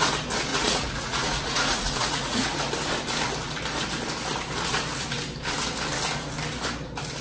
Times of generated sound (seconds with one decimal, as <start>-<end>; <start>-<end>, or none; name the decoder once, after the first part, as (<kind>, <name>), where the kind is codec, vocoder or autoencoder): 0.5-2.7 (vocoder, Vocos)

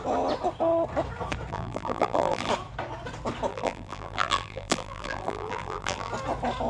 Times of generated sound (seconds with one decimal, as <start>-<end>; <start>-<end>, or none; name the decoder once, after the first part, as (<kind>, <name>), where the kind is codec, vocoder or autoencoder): 1.5-2.5 (vocoder, BigVGAN v2); 3.5-6.1

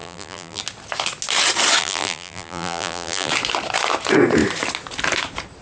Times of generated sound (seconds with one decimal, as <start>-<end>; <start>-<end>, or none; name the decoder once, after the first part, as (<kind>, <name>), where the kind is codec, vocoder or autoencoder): 0.0-0.6 (vocoder, BigVGAN v2); 1.8-3.3

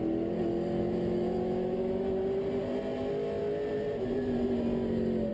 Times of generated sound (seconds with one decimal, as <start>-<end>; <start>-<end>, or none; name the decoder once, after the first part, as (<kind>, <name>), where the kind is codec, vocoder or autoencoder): 0.8-2.2 (autoencoder, DAC-VAE)

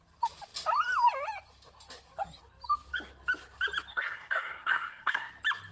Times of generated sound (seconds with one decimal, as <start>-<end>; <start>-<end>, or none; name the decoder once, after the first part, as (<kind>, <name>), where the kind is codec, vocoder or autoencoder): 3.9-5.3 (codec, SNAC)